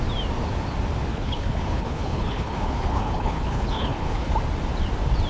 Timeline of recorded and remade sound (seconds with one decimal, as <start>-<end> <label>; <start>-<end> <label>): 0.0-1.1 recorded; 1.1-4.3 remade; 4.3-5.3 recorded